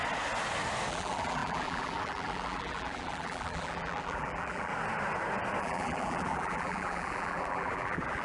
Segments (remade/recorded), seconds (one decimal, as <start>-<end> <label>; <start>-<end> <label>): 0.0-0.9 recorded; 0.9-4.7 remade; 4.7-5.6 recorded; 5.6-8.2 remade